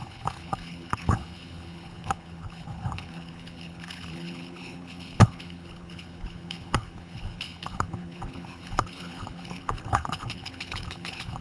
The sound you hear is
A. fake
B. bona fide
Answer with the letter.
A